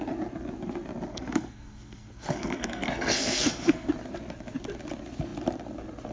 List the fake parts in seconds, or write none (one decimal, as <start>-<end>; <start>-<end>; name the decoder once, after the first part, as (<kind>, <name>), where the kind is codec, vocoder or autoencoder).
1.1-3.9 (codec, SNAC)